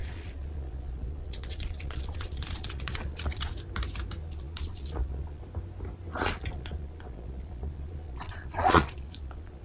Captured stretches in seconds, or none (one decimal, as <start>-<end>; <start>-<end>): 3.5-4.2; 5.4-6.1